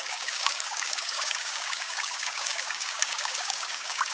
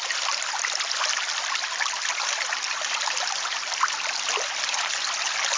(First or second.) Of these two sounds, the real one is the second